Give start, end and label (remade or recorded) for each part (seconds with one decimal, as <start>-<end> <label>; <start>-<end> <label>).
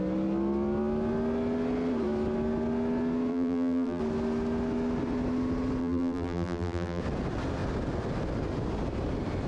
0.0-3.3 recorded; 3.3-4.0 remade; 4.0-5.8 recorded; 5.8-7.0 remade; 7.0-9.5 recorded